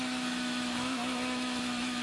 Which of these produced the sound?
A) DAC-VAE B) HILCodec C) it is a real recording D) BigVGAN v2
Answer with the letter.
A